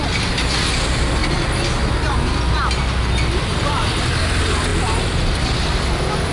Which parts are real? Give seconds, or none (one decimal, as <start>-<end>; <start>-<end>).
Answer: 0.0-6.3

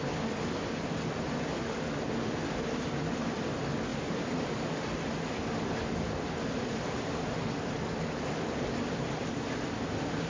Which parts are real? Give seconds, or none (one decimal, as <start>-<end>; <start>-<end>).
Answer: 0.0-10.3

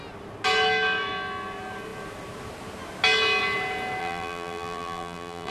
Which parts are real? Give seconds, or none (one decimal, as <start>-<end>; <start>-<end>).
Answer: 0.0-4.0